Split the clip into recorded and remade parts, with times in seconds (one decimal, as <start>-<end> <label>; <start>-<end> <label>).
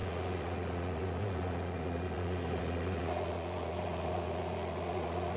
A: 0.0-5.4 remade